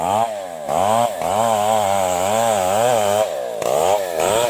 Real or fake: fake